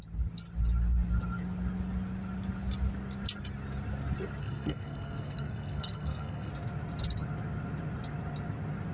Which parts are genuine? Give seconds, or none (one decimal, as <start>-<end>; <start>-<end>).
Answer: 0.0-4.4; 6.5-8.9